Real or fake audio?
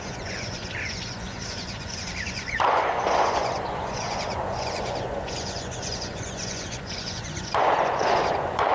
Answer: fake